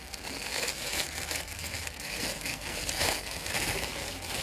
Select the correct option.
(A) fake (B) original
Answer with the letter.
A